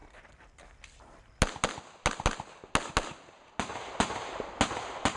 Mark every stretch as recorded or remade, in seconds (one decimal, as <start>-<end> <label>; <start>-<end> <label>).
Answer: 0.0-5.2 recorded